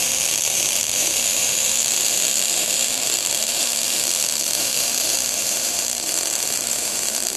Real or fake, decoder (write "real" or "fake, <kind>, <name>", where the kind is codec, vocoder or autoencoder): fake, autoencoder, DAC-VAE